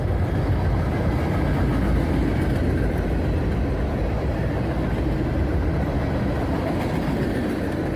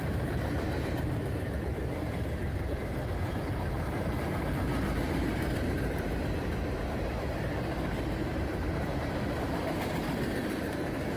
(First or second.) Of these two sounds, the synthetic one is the second